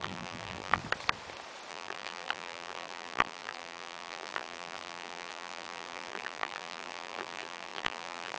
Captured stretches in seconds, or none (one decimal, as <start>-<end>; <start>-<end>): 0.8-1.7